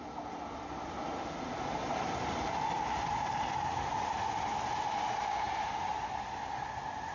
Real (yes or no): yes